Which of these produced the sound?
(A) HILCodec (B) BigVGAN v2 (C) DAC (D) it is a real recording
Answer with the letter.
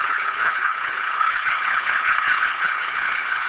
A